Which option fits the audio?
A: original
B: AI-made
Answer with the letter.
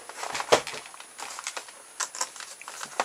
A